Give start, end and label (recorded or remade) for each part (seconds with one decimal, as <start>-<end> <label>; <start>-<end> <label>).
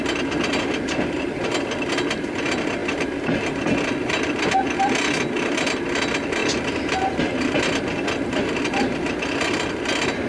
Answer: 0.0-10.3 recorded